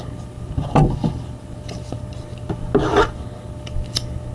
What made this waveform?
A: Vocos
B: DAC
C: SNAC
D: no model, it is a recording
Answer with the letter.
D